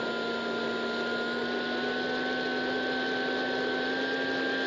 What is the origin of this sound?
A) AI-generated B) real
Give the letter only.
B